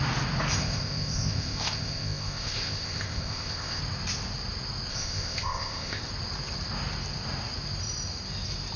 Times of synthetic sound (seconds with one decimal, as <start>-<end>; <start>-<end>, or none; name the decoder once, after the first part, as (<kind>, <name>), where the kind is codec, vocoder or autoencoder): 0.5-3.8 (codec, ZipCodec); 4.9-6.1